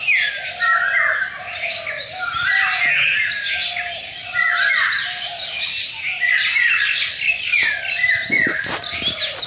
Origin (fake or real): real